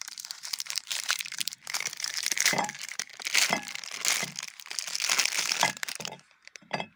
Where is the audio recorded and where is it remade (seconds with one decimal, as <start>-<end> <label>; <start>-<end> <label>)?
0.0-3.1 remade; 3.1-5.4 recorded; 5.4-7.0 remade